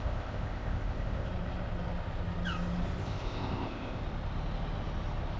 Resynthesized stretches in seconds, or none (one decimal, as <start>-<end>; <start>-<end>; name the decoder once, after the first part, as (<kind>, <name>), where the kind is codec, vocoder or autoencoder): 0.0-1.3 (codec, ZipCodec); 3.0-4.0